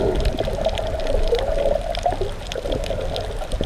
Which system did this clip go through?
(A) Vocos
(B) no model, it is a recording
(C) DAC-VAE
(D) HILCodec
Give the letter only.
B